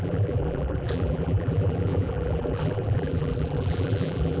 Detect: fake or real fake